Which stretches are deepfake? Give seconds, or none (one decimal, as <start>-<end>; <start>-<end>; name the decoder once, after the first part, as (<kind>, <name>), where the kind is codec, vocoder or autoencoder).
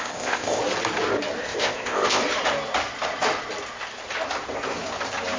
0.0-0.6 (codec, ZipCodec); 1.4-2.2